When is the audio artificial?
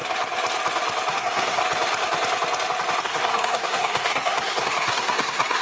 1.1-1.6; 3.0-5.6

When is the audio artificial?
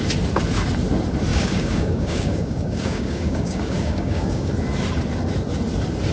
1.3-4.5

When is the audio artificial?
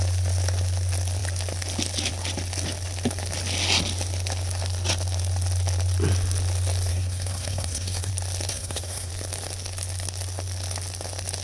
6.9-8.1; 8.5-9.1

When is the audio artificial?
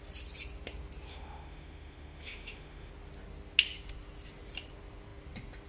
1.1-2.9